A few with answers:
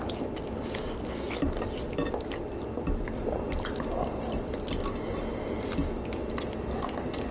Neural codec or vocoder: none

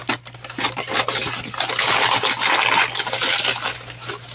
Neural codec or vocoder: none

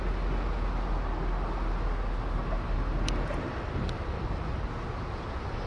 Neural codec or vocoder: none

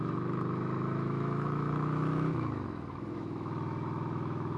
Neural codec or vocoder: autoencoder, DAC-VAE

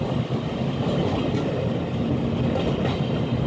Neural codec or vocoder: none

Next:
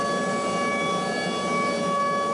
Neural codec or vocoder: none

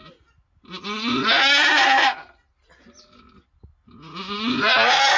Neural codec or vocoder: none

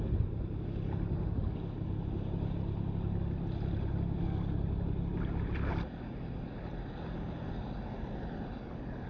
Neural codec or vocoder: none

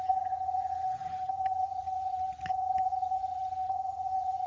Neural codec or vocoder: vocoder, HiFi-GAN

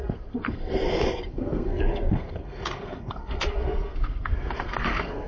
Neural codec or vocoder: codec, SNAC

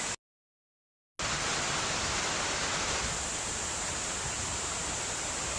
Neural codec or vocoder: none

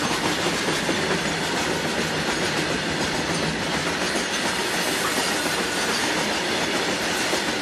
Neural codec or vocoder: none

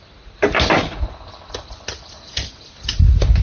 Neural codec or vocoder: none